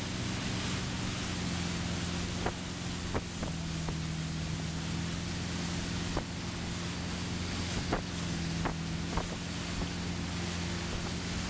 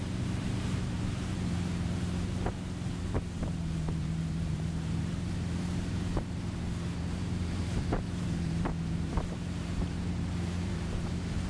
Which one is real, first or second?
first